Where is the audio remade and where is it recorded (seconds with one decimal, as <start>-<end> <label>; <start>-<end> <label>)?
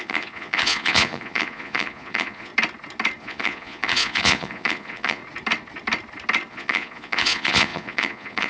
0.0-2.5 remade; 2.5-3.2 recorded; 3.2-5.2 remade; 5.2-6.5 recorded; 6.5-8.5 remade